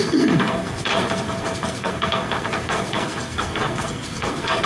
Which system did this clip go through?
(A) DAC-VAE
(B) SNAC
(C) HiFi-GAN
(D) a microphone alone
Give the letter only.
B